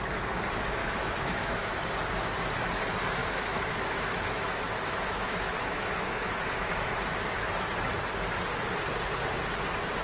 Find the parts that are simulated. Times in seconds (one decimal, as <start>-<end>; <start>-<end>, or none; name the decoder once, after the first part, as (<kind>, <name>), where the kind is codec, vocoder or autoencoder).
0.8-1.7 (autoencoder, DAC-VAE); 3.2-7.5